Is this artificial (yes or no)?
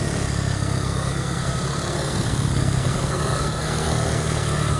yes